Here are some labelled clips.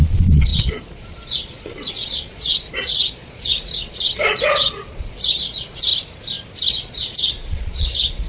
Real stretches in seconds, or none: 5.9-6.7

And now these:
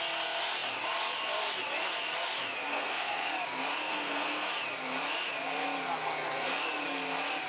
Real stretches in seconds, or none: 0.0-2.7; 3.3-3.9; 4.5-7.5

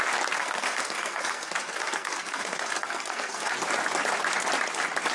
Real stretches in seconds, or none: 0.0-0.4; 3.5-5.1

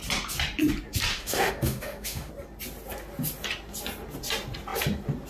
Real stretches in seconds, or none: 0.0-1.1; 2.3-5.3

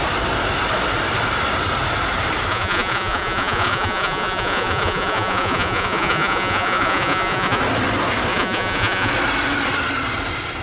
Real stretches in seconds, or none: 0.0-2.5; 7.6-8.3; 9.1-10.6